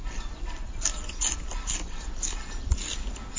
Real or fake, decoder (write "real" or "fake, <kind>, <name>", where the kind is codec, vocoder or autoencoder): real